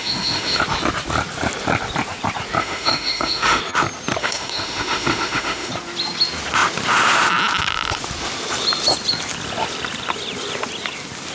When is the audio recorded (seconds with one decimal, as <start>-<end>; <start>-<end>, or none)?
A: 0.6-2.6; 3.6-4.2; 5.7-11.3